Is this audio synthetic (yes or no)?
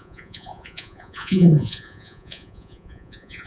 yes